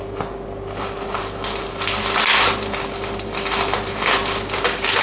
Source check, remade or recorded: recorded